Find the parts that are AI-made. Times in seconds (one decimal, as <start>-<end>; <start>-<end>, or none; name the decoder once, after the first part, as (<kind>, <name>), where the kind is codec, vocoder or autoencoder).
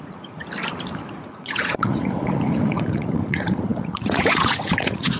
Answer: 0.0-0.4 (vocoder, Vocos); 1.1-5.2